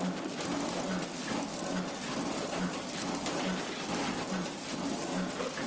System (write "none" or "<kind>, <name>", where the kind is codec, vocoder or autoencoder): none